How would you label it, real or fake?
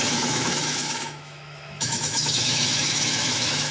fake